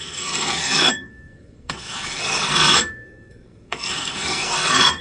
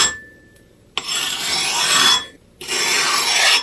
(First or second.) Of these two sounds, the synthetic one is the first